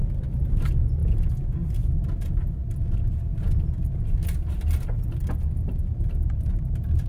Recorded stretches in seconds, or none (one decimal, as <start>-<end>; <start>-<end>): 0.6-7.1